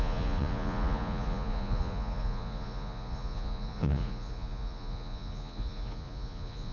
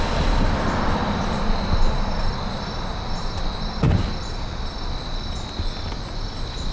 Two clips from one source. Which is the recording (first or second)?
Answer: second